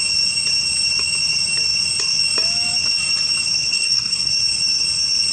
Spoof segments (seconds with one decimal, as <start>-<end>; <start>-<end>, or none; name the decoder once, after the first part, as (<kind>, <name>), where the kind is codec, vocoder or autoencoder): 3.7-4.3 (codec, SNAC)